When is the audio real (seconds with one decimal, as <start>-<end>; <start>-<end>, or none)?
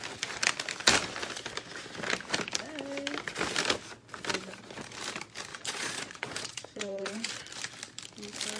0.0-5.5; 7.3-8.6